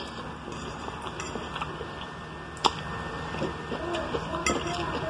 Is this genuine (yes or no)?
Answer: yes